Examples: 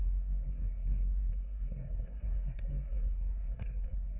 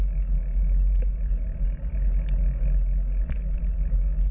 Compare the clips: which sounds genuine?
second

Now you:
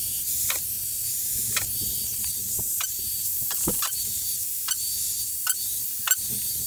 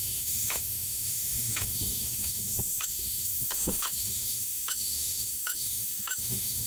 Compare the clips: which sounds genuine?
first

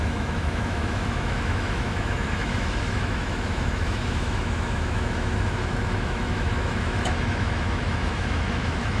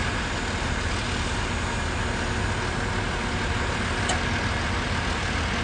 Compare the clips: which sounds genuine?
second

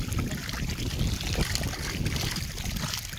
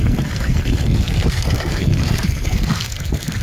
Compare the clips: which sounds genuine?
first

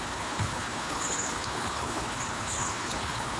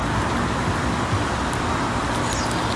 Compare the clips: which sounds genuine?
second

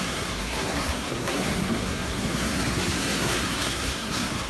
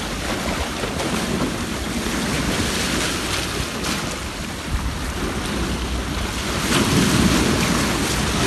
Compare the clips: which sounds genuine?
second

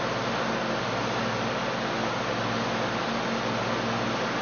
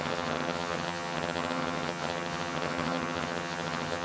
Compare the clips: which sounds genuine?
first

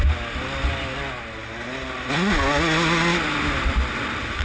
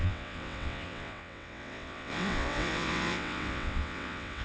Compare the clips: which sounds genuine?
first